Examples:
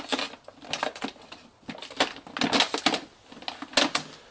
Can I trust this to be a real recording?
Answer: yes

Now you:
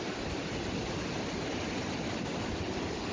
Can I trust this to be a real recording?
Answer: yes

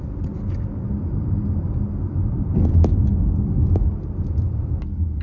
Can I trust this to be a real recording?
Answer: yes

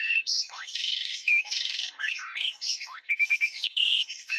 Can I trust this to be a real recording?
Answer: no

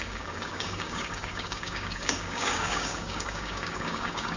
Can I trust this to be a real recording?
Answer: no